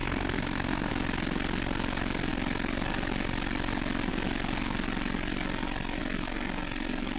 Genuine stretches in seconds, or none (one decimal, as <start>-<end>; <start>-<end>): 0.9-7.2